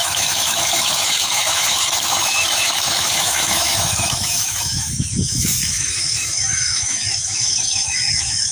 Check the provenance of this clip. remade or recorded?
remade